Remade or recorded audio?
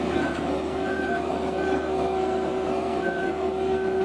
remade